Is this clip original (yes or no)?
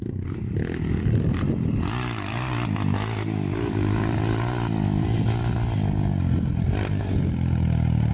yes